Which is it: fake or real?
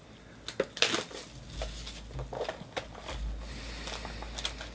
real